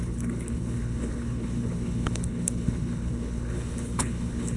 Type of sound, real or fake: fake